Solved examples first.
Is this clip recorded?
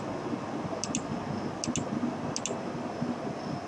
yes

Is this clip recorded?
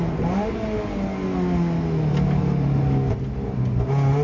yes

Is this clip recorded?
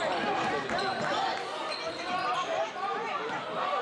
yes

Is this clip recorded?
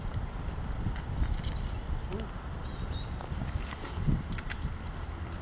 yes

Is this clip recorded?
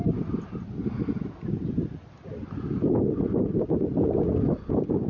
yes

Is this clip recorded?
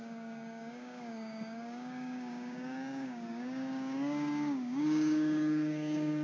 no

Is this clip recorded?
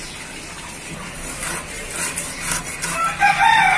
yes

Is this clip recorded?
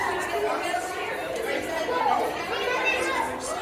yes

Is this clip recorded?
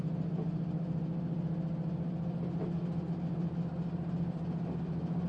yes